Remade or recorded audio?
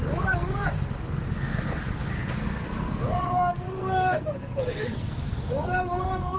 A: remade